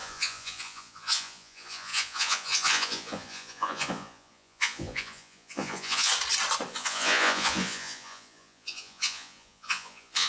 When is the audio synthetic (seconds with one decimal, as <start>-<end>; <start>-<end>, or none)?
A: 0.0-6.1; 6.7-10.3

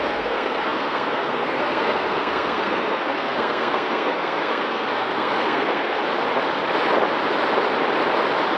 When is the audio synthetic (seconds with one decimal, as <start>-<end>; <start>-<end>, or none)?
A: 0.0-6.0